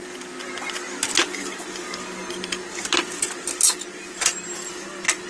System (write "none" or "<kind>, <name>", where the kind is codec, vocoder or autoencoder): none